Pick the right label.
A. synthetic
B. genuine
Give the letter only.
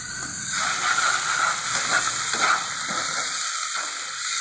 B